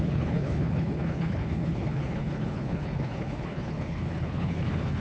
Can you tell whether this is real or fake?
fake